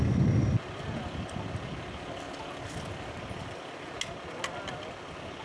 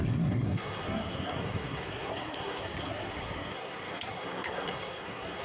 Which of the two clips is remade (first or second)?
second